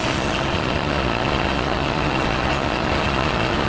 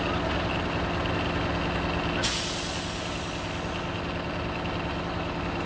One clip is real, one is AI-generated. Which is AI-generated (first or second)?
first